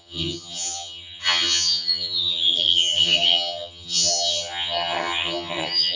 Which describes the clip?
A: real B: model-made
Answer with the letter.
B